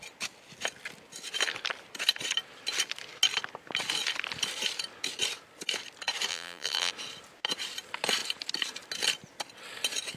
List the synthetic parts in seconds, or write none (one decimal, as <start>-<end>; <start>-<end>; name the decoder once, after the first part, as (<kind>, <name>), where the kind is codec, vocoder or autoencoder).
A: 6.3-6.9 (vocoder, BigVGAN v2)